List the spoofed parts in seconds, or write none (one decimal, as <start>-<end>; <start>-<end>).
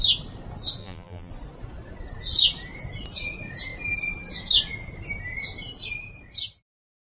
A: 0.8-1.3